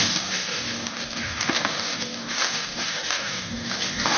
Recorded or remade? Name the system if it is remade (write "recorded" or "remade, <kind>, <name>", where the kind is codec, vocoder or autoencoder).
remade, codec, DAC